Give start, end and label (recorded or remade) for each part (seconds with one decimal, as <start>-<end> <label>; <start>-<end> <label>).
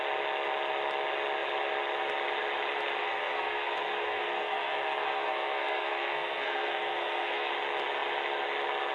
0.0-3.0 recorded; 3.0-7.5 remade; 7.5-8.9 recorded